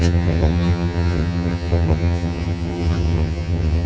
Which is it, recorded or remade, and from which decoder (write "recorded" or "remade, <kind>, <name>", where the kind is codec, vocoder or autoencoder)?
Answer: remade, vocoder, HiFi-GAN